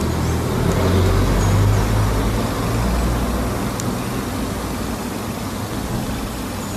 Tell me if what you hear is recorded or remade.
recorded